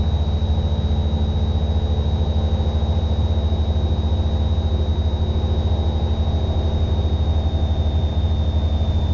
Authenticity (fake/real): real